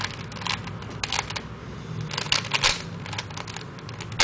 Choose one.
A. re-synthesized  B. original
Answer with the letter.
B